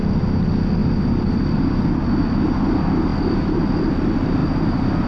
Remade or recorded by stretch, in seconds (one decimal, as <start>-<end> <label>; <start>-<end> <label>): 0.0-5.1 recorded